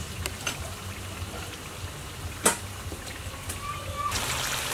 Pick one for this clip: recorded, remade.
recorded